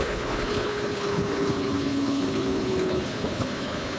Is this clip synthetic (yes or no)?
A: yes